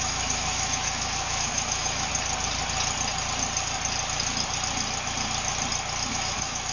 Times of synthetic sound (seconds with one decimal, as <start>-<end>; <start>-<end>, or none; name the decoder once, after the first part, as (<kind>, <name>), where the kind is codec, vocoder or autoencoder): 0.0-2.1 (autoencoder, DAC-VAE); 6.1-6.7